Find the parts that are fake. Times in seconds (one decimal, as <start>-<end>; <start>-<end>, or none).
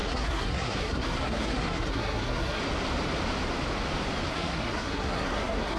0.0-2.6; 4.3-5.8